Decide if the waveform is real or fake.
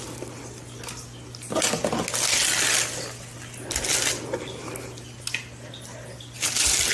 real